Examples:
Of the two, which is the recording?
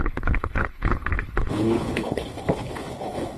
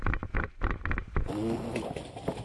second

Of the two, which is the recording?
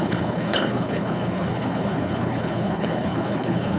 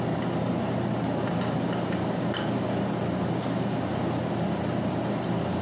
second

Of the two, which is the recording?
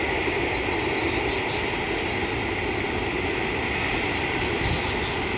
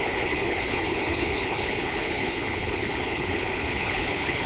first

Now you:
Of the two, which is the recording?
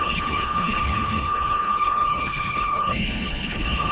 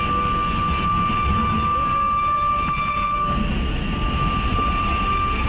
second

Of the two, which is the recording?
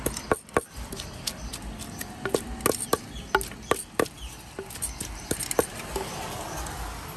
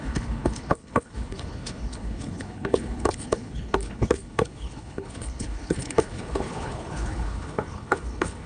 first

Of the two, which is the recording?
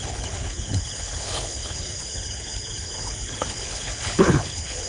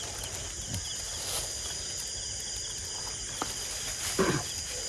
second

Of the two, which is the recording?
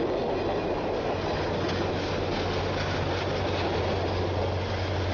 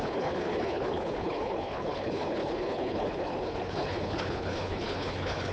first